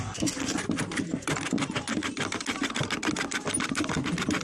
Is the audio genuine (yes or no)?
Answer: yes